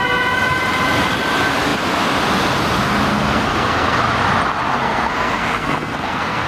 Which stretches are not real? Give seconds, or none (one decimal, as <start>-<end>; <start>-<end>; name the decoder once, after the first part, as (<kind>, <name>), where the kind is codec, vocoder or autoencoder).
3.1-4.0 (codec, SNAC); 4.7-6.5